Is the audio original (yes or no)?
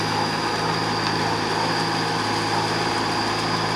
yes